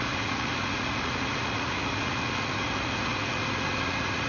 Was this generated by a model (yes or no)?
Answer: yes